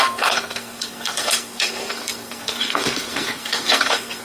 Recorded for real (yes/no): no